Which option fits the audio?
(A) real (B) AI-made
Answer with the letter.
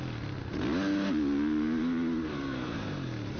A